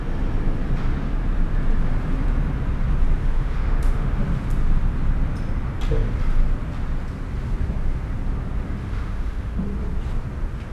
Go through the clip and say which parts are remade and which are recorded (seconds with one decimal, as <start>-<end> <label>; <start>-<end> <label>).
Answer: 0.0-3.2 recorded; 3.2-4.2 remade; 4.2-8.8 recorded; 8.8-9.6 remade; 9.6-10.7 recorded